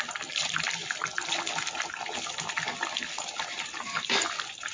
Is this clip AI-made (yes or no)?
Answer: yes